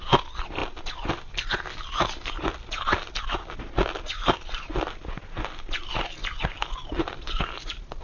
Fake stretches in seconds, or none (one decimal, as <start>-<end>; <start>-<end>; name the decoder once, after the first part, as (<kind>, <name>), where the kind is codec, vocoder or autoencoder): none